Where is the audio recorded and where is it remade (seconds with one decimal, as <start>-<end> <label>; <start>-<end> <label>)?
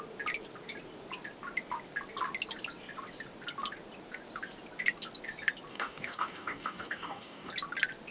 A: 0.0-5.7 recorded; 5.7-7.5 remade; 7.5-8.1 recorded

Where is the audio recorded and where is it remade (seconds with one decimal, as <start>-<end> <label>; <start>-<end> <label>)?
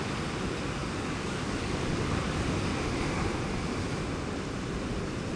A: 0.0-0.8 recorded; 0.8-2.4 remade; 2.4-5.4 recorded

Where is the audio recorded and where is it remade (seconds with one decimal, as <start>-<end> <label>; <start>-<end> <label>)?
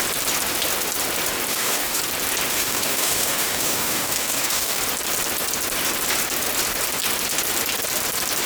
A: 0.0-1.5 recorded; 1.5-2.0 remade; 2.0-2.5 recorded; 2.5-4.8 remade; 4.8-8.5 recorded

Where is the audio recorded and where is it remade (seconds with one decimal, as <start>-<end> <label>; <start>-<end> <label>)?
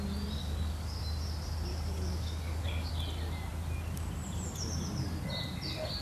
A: 0.0-0.4 recorded; 0.4-1.0 remade; 1.0-1.7 recorded; 1.7-2.9 remade; 2.9-6.0 recorded